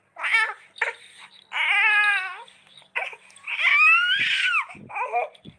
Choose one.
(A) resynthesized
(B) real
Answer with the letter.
B